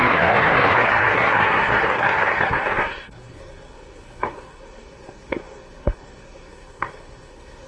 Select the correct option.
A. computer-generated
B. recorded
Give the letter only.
A